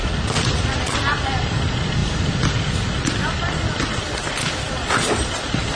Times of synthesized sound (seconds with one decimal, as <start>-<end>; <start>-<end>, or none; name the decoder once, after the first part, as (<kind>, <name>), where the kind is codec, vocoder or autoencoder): none